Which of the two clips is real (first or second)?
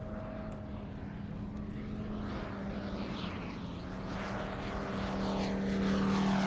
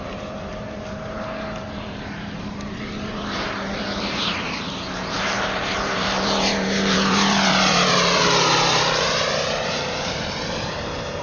first